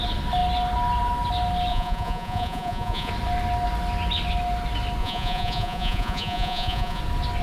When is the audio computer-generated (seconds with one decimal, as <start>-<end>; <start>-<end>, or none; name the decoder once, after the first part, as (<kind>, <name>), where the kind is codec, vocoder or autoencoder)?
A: 1.7-3.1 (vocoder, Vocos); 5.0-7.0